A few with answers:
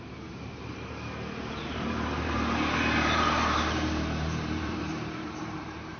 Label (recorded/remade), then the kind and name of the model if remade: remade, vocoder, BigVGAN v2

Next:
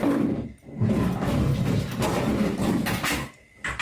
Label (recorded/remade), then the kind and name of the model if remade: recorded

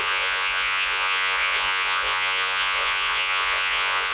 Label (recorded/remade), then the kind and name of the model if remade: remade, vocoder, Vocos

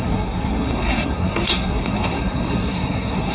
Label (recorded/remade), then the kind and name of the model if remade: remade, codec, SNAC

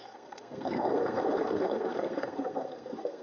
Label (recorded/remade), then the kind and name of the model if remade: remade, codec, SNAC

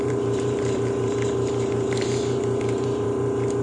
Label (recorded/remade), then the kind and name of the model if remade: remade, vocoder, BigVGAN v2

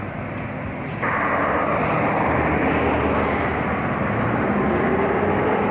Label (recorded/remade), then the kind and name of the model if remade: recorded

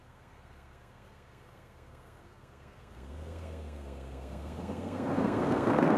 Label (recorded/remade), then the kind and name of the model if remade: remade, codec, SNAC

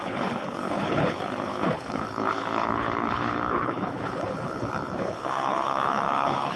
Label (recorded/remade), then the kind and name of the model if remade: remade, codec, HILCodec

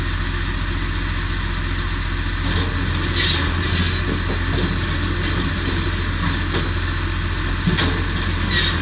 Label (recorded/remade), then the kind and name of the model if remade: recorded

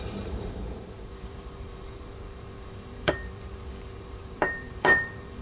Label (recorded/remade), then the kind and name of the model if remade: remade, vocoder, BigVGAN v2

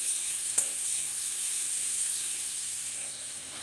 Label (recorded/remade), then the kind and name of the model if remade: remade, codec, SNAC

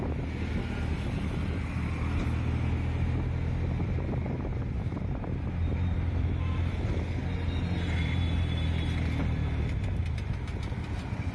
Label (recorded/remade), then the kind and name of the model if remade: recorded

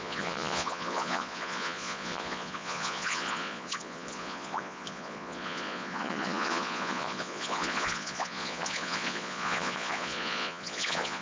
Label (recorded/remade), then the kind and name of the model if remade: remade, vocoder, Vocos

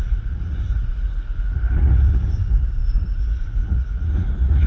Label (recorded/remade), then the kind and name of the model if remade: remade, vocoder, Vocos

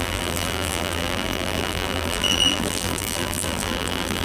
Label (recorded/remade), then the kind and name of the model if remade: remade, vocoder, BigVGAN v2